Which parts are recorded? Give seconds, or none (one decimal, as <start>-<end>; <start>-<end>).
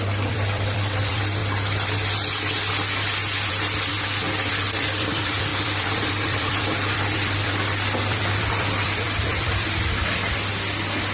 1.4-3.5; 3.9-4.5